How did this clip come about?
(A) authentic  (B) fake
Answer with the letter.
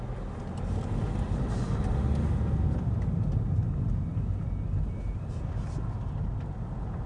A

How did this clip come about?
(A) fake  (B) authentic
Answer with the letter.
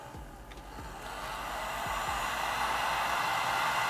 B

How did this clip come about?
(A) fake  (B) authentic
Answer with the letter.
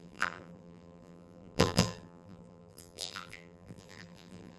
A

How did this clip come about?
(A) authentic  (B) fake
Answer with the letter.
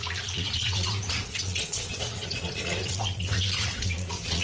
B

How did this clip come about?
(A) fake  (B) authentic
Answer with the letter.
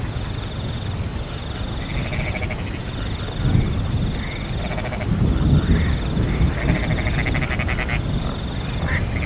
B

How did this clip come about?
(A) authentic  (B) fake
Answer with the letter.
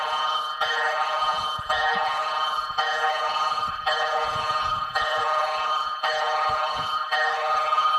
B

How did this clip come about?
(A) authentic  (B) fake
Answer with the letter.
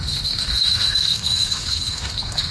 B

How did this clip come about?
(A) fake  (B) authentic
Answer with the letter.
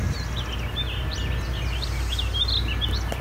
B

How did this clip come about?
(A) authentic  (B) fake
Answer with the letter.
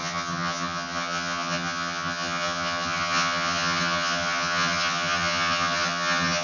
B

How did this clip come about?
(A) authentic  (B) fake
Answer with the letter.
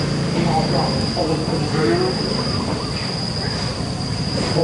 A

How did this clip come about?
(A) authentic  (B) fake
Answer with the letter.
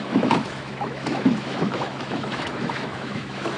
B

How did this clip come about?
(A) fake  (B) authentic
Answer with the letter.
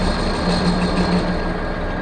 B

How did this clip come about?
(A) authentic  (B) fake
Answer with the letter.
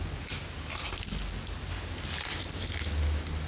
A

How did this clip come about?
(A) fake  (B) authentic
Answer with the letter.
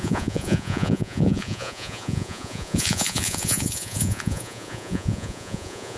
A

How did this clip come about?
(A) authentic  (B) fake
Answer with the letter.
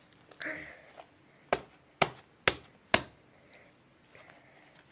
A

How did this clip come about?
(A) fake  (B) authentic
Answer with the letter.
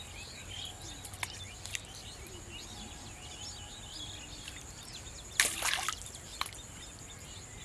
B